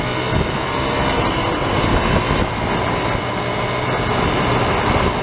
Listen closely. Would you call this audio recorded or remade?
recorded